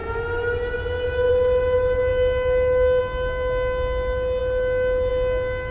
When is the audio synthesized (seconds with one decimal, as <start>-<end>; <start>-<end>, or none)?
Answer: none